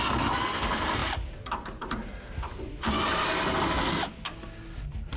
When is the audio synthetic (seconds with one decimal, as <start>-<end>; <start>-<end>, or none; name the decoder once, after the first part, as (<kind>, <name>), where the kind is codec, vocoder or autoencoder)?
1.0-3.3 (vocoder, BigVGAN v2)